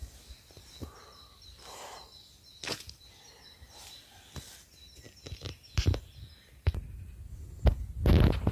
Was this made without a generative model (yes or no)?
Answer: yes